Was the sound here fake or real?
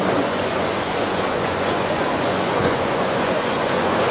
fake